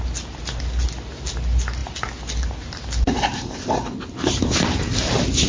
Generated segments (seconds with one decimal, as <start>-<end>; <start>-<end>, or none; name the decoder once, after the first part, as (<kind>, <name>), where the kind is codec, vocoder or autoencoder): 1.8-2.6 (vocoder, BigVGAN v2)